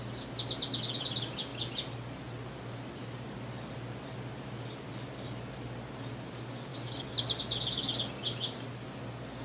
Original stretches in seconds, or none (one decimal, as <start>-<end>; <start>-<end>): 0.0-9.4